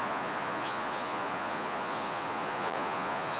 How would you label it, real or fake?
fake